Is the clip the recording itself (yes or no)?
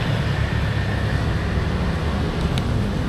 yes